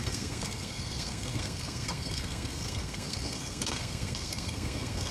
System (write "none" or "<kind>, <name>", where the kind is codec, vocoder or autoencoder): codec, SNAC